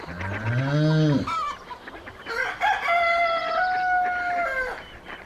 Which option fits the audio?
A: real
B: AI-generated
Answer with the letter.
A